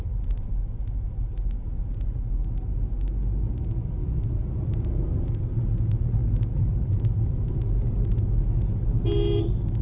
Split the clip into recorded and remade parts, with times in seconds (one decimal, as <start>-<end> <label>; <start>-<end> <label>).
0.0-4.0 recorded; 4.0-4.8 remade; 4.8-9.8 recorded